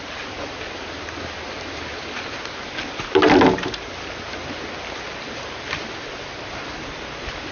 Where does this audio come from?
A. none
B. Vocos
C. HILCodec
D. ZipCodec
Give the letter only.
A